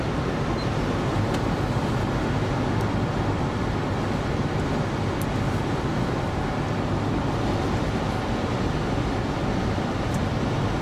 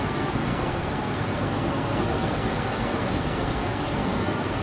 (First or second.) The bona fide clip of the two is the first